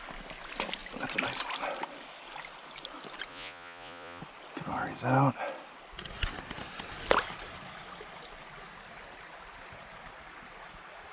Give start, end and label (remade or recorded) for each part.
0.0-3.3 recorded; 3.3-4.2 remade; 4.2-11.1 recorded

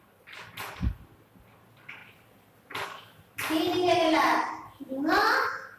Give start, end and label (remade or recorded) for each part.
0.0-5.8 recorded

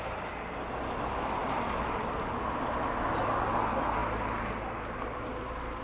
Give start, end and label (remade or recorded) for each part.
0.0-5.8 recorded